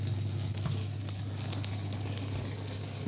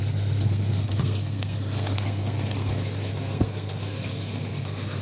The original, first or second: first